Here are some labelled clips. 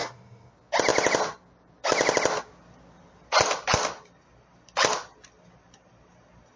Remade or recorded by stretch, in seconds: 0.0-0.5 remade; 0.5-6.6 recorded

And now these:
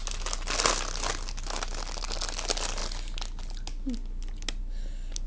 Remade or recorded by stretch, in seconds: 0.0-5.3 recorded

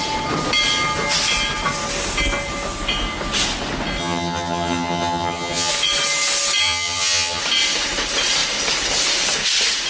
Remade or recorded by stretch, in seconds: 0.0-4.0 recorded; 4.0-5.7 remade; 5.7-6.6 recorded; 6.6-7.4 remade; 7.4-9.9 recorded